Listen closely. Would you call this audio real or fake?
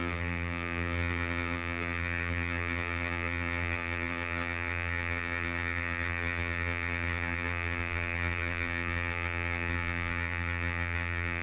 fake